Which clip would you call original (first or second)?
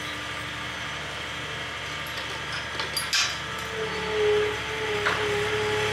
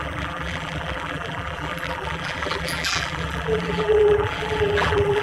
first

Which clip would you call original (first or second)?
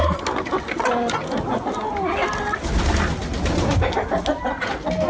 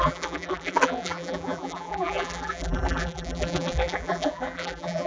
first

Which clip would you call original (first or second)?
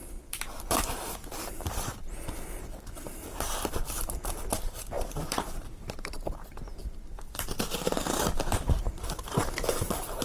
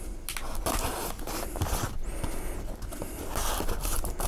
second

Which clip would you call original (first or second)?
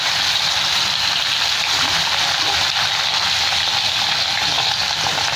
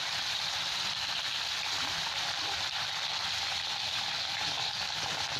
first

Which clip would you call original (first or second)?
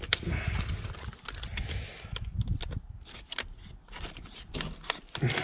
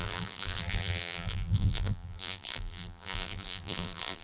first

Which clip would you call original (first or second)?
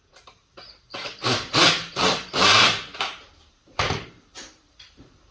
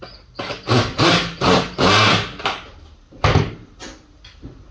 second